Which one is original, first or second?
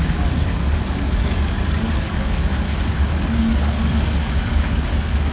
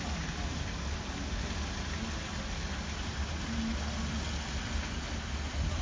second